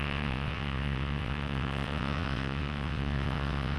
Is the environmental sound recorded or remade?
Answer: remade